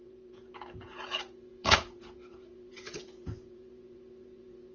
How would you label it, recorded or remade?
remade